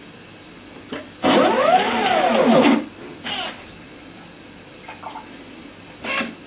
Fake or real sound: real